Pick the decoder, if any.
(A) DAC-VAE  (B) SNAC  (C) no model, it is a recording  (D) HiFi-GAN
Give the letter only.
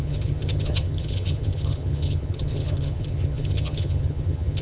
D